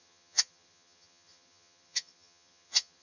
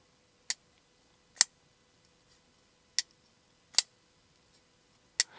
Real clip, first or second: second